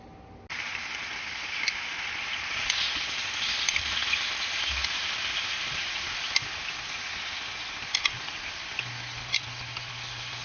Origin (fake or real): real